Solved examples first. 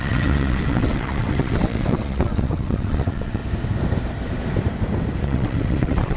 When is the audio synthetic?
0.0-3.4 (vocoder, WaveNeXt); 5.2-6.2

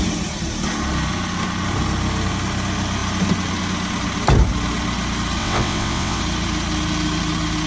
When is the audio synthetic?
5.4-6.2 (vocoder, WaveNeXt)

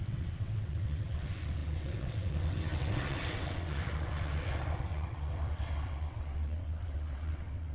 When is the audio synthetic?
0.0-7.7 (vocoder, WaveNeXt)

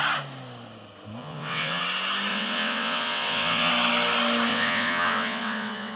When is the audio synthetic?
1.2-1.8 (vocoder, WaveNeXt); 2.3-3.7; 4.5-6.0

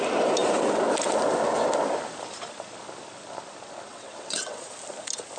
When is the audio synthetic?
3.9-4.6 (vocoder, WaveNeXt)

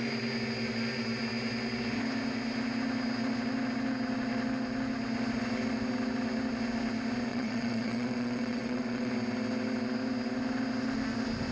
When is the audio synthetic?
7.3-9.1 (vocoder, WaveNeXt)

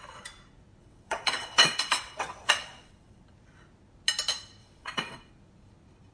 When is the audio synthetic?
0.8-3.2 (vocoder, WaveNeXt); 4.6-5.3

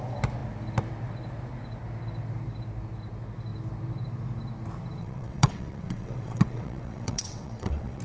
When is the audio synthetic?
5.0-8.0 (vocoder, WaveNeXt)